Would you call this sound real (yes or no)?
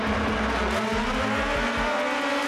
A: yes